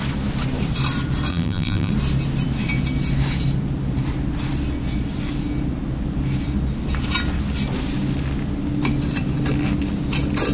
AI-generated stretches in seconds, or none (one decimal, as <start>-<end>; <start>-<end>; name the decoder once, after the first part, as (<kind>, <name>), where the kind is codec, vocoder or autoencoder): 1.3-1.9 (vocoder, BigVGAN v2)